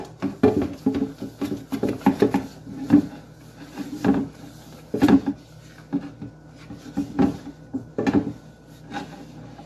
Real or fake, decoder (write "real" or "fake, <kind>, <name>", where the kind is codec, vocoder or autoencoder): real